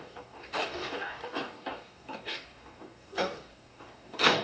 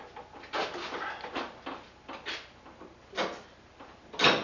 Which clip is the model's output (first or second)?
first